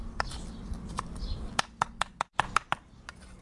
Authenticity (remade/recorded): recorded